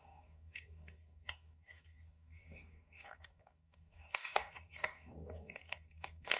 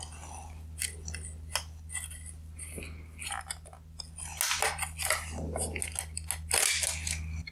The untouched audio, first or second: second